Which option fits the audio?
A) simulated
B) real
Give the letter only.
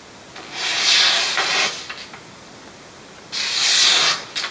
B